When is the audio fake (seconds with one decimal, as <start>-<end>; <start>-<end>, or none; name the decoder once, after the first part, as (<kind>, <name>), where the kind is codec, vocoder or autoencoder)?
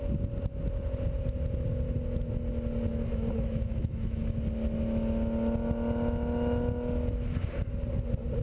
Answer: 2.9-4.4 (autoencoder, DAC-VAE)